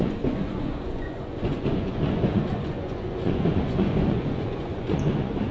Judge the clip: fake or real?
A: fake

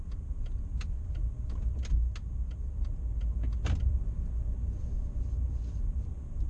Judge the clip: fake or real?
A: real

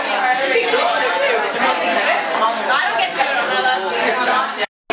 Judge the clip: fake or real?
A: real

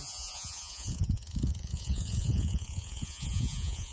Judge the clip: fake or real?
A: fake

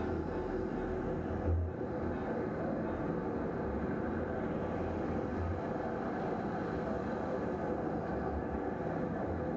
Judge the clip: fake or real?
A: real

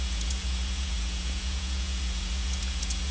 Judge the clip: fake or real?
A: fake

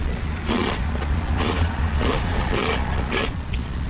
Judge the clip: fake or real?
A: fake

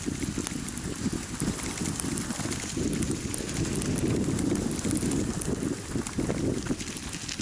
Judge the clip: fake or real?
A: real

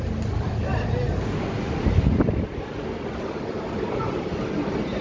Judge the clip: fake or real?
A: real